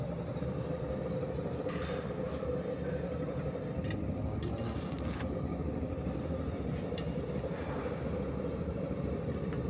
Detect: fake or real real